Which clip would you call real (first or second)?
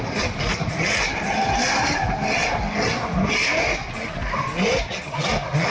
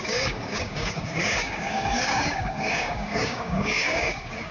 first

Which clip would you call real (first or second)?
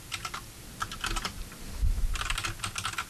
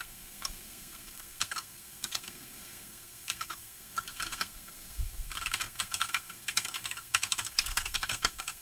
first